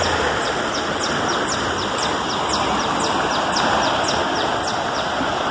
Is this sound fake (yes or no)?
no